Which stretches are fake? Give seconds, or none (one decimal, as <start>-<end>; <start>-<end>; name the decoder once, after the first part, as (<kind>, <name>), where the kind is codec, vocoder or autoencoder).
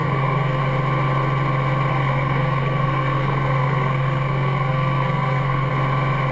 0.0-0.6 (codec, SNAC); 1.9-5.7